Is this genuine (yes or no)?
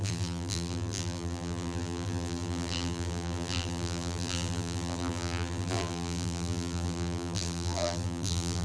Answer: no